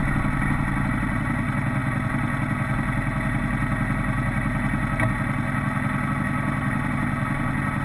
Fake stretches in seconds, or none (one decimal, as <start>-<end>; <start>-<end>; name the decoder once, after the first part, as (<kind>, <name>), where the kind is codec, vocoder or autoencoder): none